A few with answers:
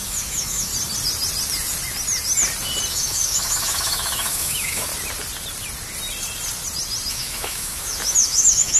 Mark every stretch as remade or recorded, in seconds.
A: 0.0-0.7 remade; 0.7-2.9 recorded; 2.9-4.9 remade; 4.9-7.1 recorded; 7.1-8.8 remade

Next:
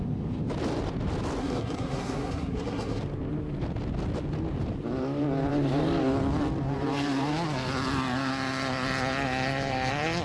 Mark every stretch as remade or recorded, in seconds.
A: 0.0-1.4 recorded; 1.4-3.0 remade; 3.0-10.2 recorded